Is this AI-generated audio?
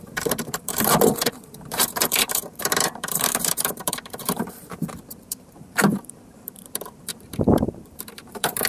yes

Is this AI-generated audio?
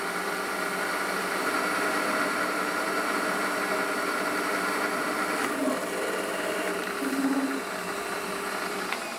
yes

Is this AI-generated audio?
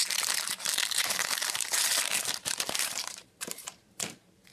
yes